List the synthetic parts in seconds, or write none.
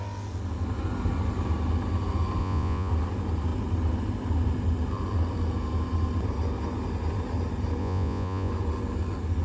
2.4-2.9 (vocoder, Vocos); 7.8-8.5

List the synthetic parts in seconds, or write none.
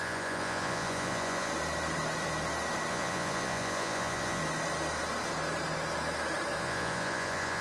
0.0-1.5 (vocoder, Vocos); 2.9-4.4; 6.6-7.6